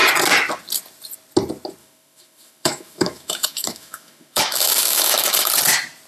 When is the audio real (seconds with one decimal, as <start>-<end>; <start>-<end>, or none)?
0.0-1.8; 5.5-6.1